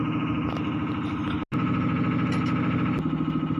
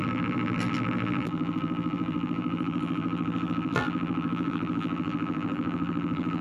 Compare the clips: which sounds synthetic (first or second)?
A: second